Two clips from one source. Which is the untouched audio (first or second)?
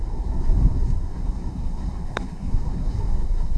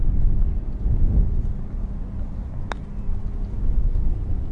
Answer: second